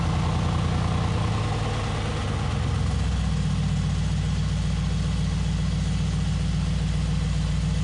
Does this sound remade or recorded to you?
recorded